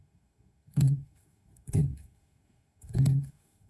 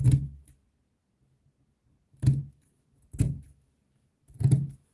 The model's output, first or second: first